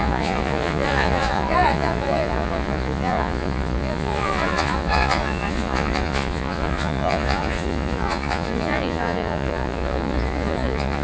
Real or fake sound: fake